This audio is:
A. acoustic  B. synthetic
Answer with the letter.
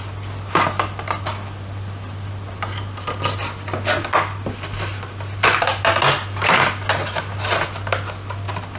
A